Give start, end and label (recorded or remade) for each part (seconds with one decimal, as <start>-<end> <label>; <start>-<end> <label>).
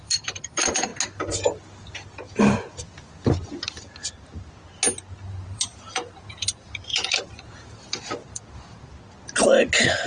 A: 0.0-0.9 remade; 0.9-5.3 recorded; 5.3-8.9 remade; 8.9-10.1 recorded